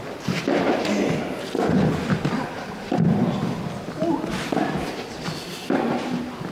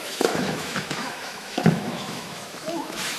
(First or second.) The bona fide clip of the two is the first